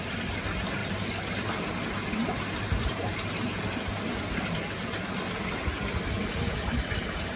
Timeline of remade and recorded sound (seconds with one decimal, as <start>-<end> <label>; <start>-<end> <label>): 0.0-7.4 recorded